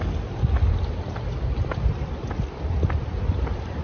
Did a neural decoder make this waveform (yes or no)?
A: no